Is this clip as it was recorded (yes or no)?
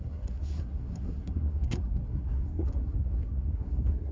no